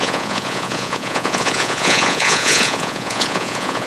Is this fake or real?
fake